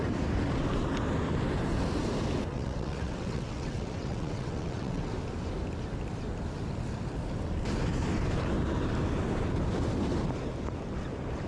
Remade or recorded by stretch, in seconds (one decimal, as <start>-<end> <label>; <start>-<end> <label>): 0.0-2.5 recorded; 2.5-5.1 remade; 5.1-11.5 recorded